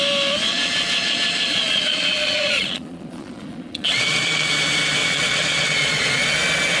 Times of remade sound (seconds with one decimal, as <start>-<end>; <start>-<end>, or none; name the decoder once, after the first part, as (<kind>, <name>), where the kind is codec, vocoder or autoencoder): 0.5-4.5 (vocoder, Vocos); 5.0-6.0